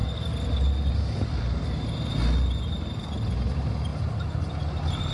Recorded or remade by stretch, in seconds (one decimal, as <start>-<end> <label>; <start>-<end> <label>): 0.0-5.1 recorded